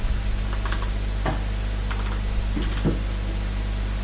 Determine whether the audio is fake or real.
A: real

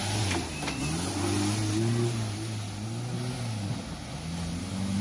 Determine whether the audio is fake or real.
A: real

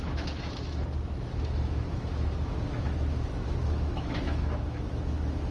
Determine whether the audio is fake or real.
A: fake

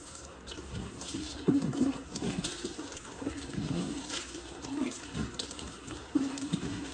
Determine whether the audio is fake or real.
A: fake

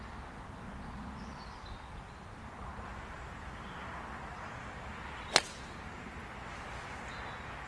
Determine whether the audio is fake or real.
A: real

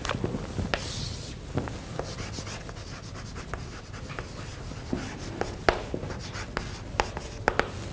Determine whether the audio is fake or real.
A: real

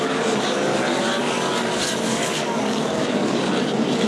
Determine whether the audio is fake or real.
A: fake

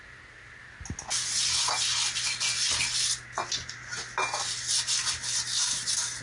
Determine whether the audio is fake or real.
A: real